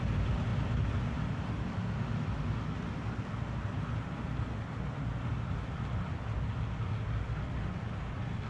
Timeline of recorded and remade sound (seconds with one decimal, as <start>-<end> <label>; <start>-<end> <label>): 0.0-8.5 recorded